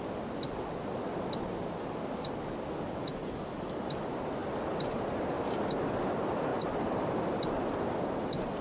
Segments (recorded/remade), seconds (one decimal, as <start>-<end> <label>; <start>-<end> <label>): 0.0-3.2 recorded; 3.2-4.0 remade; 4.0-4.4 recorded; 4.4-5.4 remade; 5.4-6.5 recorded; 6.5-8.6 remade